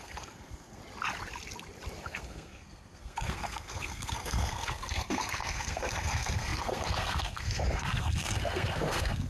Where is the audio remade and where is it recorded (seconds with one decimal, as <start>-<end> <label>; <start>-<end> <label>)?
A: 0.0-0.8 remade; 0.8-2.0 recorded; 2.0-9.3 remade